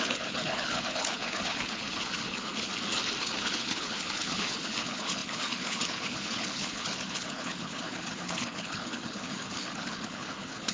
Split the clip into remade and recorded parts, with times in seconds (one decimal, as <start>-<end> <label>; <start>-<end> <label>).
0.0-2.7 remade; 2.7-3.2 recorded; 3.2-10.7 remade

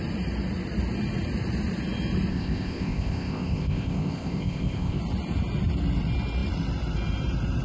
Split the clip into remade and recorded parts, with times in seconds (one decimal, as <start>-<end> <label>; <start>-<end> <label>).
0.0-2.3 recorded; 2.3-5.0 remade; 5.0-7.6 recorded

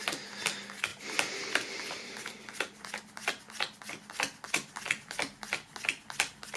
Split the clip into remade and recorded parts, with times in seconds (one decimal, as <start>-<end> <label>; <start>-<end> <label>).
0.0-6.6 recorded

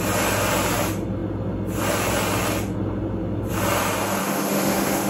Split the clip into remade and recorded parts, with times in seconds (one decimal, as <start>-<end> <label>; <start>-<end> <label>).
0.0-4.2 recorded; 4.2-5.1 remade